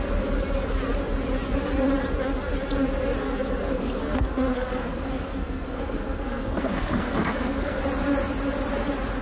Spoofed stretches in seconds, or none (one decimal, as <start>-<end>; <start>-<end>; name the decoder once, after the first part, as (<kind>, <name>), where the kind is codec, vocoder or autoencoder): 3.2-7.8 (codec, SNAC)